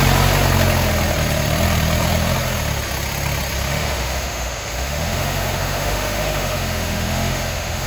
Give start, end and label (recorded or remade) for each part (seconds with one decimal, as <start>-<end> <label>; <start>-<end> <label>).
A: 0.0-3.7 recorded; 3.7-7.9 remade